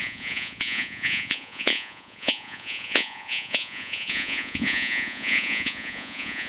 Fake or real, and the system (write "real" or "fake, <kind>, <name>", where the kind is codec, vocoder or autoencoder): fake, vocoder, Vocos